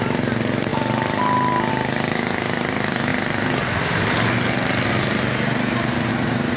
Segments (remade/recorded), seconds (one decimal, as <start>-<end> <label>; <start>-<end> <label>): 0.0-6.6 recorded